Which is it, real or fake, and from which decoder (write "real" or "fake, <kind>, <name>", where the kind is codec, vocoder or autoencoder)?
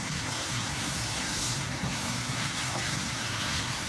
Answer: fake, codec, SNAC